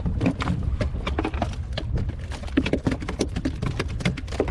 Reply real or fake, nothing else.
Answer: real